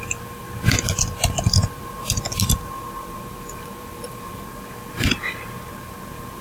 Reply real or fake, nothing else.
fake